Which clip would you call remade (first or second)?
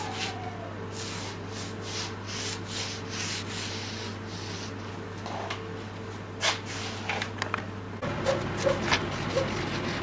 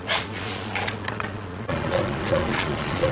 second